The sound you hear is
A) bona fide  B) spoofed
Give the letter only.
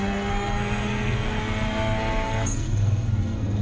B